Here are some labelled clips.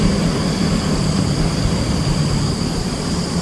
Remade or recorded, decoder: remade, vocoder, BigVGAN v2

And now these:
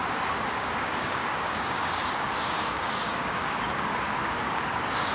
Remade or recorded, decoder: remade, codec, DAC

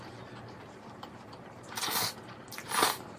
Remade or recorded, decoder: recorded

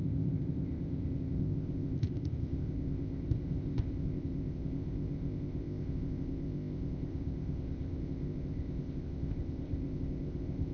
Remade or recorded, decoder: remade, codec, ZipCodec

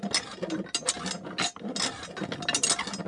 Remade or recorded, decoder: recorded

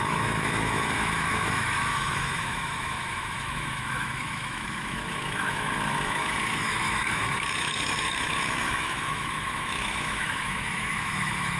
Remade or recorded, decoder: remade, autoencoder, DAC-VAE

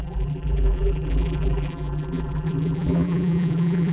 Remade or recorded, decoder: remade, vocoder, BigVGAN v2